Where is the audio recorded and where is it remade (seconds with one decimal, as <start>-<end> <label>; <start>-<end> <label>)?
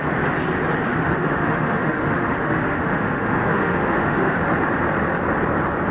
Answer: 0.0-0.9 recorded; 0.9-4.4 remade; 4.4-5.9 recorded